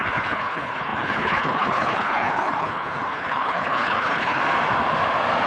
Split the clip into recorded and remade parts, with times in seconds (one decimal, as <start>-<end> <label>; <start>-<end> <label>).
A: 0.0-4.4 remade; 4.4-5.5 recorded

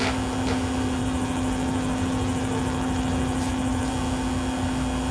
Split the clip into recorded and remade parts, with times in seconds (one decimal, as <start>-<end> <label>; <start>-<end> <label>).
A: 0.0-1.0 recorded; 1.0-3.9 remade; 3.9-5.1 recorded

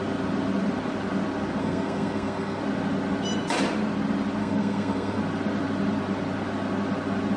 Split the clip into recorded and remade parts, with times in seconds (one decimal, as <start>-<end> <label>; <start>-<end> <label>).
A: 0.0-1.6 recorded; 1.6-2.6 remade; 2.6-4.4 recorded; 4.4-5.2 remade; 5.2-7.4 recorded

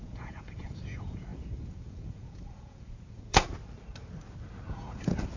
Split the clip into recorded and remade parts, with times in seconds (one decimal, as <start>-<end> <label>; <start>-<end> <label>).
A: 0.0-3.5 remade; 3.5-4.7 recorded; 4.7-5.4 remade

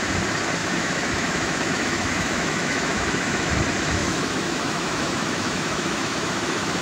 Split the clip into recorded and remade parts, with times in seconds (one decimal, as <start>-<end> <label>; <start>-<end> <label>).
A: 0.0-0.6 recorded; 0.6-3.5 remade; 3.5-4.0 recorded; 4.0-6.8 remade

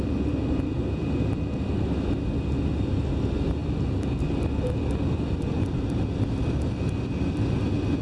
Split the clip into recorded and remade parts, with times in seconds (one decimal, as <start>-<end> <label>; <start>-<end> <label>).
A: 0.0-8.0 recorded